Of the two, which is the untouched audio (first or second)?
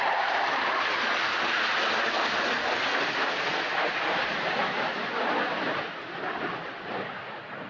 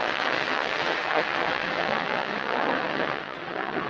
first